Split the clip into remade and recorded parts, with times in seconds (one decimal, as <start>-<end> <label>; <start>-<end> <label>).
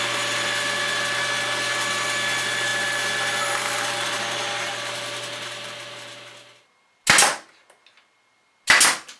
0.0-9.2 recorded